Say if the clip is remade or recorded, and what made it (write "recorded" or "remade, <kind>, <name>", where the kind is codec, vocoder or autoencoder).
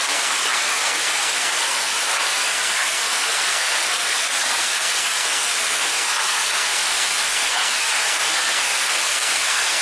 remade, codec, SNAC